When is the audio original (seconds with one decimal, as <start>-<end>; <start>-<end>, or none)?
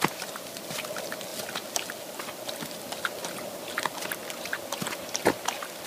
0.0-5.9